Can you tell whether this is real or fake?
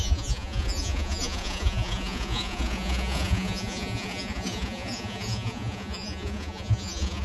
fake